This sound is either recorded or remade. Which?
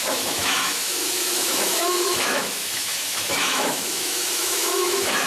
remade